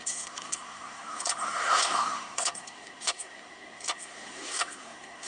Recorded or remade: remade